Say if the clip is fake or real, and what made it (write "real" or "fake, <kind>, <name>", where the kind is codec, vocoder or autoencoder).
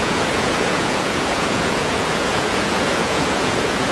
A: fake, vocoder, Vocos